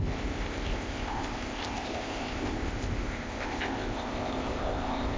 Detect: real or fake fake